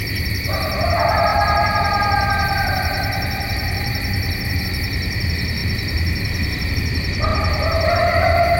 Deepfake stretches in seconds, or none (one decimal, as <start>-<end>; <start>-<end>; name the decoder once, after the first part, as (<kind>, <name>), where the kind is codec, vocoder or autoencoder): 1.3-4.6 (vocoder, BigVGAN v2); 5.6-6.7